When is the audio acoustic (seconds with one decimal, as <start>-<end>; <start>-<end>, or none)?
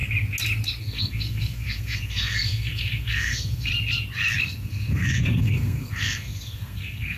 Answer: 0.0-0.8; 3.7-4.4